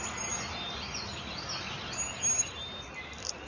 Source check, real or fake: real